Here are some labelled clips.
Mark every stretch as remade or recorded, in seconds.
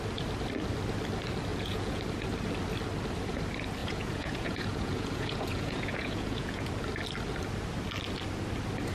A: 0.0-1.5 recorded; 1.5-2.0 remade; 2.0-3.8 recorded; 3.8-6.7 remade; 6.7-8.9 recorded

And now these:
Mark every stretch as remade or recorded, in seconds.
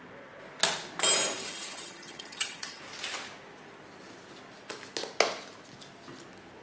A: 0.0-1.4 recorded; 1.4-2.8 remade; 2.8-6.6 recorded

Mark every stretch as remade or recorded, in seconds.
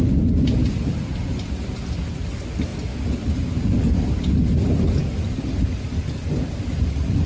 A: 0.0-7.3 recorded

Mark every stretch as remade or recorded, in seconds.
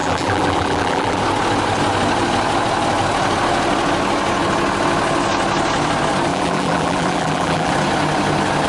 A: 0.0-1.2 remade; 1.2-6.3 recorded; 6.3-7.7 remade; 7.7-8.7 recorded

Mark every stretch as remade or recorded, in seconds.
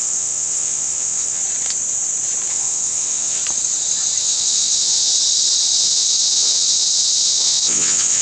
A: 0.0-1.4 remade; 1.4-2.5 recorded; 2.5-3.4 remade; 3.4-4.2 recorded; 4.2-5.1 remade; 5.1-5.8 recorded; 5.8-8.2 remade